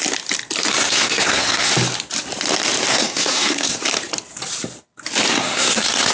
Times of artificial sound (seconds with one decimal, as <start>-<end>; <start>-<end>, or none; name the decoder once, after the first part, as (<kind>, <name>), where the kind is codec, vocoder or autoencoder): 0.7-1.7 (codec, SNAC); 2.9-3.8; 5.3-6.1